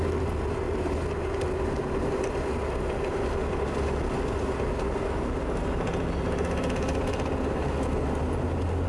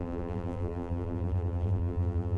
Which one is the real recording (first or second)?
first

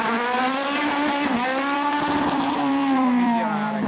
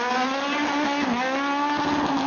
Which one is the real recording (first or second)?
second